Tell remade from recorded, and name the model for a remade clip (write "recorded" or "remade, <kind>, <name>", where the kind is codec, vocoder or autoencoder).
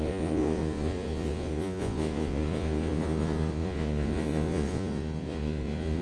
remade, vocoder, Vocos